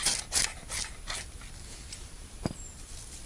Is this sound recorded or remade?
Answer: recorded